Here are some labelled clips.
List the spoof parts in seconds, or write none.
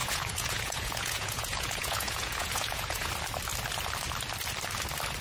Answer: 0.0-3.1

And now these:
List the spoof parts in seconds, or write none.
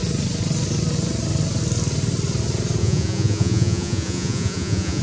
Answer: 2.8-5.0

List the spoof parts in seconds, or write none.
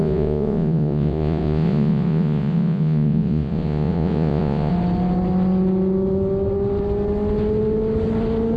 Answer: 0.0-4.7